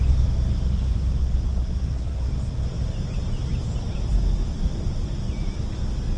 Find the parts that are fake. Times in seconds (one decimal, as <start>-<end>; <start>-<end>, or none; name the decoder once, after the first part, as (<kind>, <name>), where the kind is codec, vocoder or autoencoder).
1.8-2.3 (codec, SNAC)